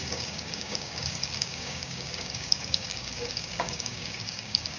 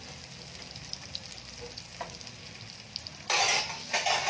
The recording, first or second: second